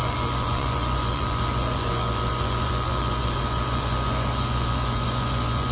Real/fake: fake